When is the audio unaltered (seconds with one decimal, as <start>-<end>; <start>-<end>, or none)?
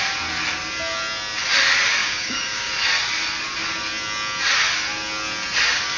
0.0-2.0; 2.7-6.0